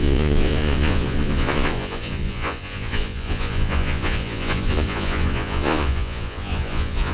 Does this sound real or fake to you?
fake